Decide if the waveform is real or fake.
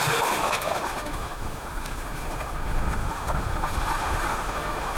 fake